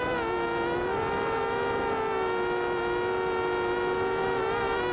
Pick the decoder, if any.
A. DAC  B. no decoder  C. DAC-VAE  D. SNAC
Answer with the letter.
B